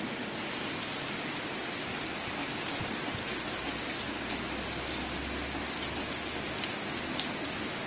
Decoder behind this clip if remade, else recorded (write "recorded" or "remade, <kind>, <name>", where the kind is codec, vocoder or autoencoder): recorded